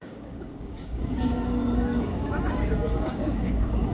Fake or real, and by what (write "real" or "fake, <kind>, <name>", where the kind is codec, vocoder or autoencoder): fake, codec, DAC